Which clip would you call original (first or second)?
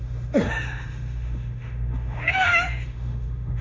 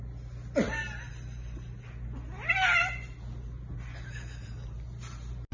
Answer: second